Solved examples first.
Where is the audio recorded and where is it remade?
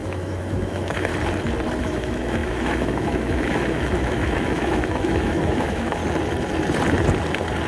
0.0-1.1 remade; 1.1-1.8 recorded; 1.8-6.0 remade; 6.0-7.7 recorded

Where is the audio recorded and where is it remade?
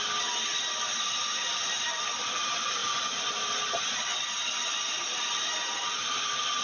0.0-5.1 remade; 5.1-5.8 recorded; 5.8-6.6 remade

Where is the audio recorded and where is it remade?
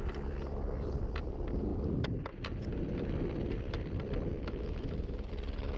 0.0-4.3 recorded; 4.3-5.3 remade; 5.3-5.8 recorded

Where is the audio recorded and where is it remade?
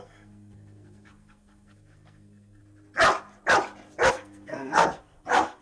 0.0-2.6 remade; 2.6-4.1 recorded; 4.1-5.6 remade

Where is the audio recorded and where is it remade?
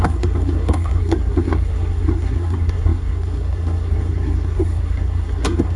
0.0-5.8 remade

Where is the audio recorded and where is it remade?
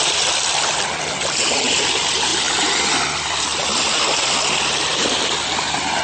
0.0-6.0 recorded